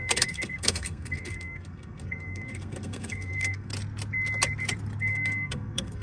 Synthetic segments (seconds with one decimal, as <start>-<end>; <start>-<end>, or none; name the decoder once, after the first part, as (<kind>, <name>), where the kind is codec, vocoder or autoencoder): 0.0-3.7 (codec, SNAC); 5.0-6.0